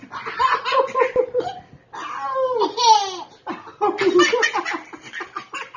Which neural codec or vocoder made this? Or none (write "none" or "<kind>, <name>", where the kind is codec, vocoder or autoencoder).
none